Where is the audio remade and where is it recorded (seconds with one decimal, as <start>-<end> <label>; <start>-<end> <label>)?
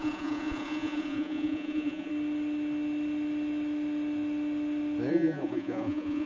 0.0-2.1 remade; 2.1-5.1 recorded; 5.1-6.3 remade